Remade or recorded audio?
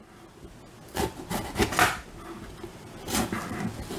recorded